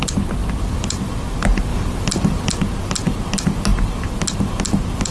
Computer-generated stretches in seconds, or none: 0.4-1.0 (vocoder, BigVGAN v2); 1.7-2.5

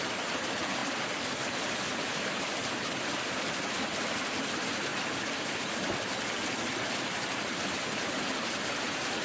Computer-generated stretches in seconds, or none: 0.8-4.3 (vocoder, BigVGAN v2); 4.9-6.1

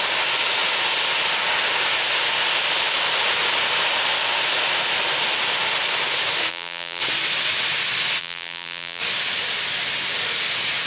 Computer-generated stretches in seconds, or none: 6.5-7.0 (vocoder, BigVGAN v2); 8.2-9.0

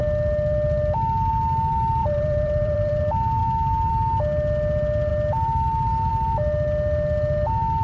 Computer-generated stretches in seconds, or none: 2.0-3.0 (vocoder, BigVGAN v2)

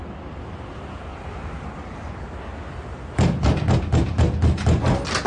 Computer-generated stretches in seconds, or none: 1.1-2.1 (vocoder, BigVGAN v2)

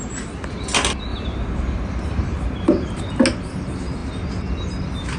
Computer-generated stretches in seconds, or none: 1.1-3.2 (vocoder, BigVGAN v2)